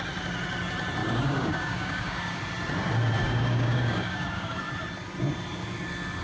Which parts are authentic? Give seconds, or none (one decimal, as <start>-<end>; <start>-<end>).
0.0-1.0; 2.4-3.2; 4.6-6.2

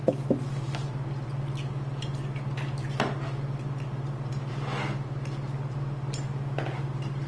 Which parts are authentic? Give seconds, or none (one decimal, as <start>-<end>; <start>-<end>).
0.0-7.3

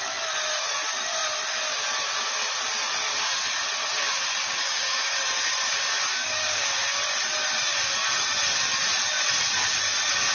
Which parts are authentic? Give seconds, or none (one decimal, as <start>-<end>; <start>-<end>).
0.0-4.4; 5.1-6.1; 6.7-10.3

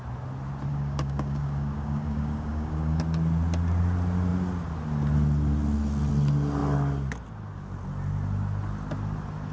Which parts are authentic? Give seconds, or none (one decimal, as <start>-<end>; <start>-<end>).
0.0-0.7; 3.0-9.5

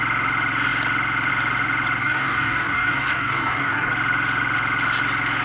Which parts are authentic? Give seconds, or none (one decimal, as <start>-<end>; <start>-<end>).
0.0-2.0; 3.9-5.4

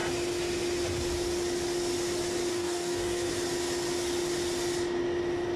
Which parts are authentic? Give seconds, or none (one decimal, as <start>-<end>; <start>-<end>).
0.0-2.5; 3.3-5.6